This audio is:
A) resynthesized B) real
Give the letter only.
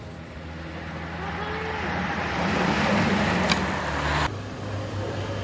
B